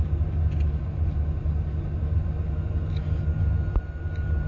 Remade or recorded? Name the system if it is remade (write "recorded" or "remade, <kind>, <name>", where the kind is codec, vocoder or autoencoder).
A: recorded